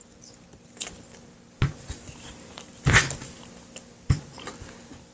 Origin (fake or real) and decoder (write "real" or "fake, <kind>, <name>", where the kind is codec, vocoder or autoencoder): real